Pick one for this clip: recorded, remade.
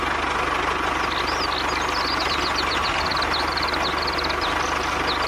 recorded